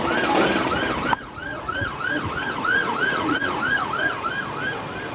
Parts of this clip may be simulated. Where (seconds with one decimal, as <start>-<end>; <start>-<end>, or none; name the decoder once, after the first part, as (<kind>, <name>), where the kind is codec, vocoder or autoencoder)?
1.2-4.3 (vocoder, Vocos)